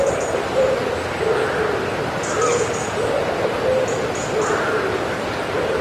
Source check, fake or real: real